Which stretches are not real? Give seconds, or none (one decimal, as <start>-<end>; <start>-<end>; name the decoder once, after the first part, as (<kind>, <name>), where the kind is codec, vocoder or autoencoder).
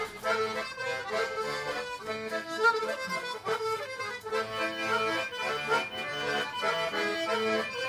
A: 1.2-4.3 (codec, SNAC)